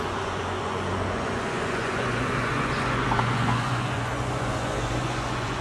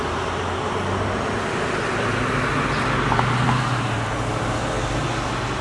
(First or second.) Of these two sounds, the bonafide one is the second